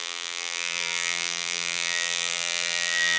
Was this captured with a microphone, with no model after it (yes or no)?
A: no